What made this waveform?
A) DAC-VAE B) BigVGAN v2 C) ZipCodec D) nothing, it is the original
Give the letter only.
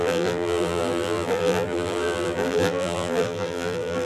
B